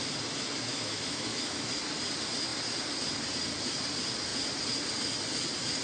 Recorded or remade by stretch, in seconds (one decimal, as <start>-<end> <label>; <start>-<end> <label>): 0.0-0.7 recorded; 0.7-1.7 remade; 1.7-5.8 recorded